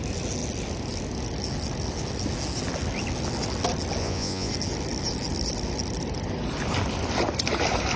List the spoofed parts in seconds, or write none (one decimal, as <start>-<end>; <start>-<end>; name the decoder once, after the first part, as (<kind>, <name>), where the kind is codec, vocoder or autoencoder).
4.0-4.5 (vocoder, Vocos)